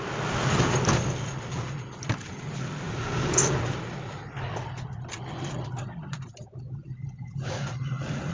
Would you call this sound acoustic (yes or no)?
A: yes